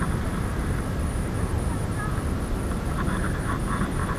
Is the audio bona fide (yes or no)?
yes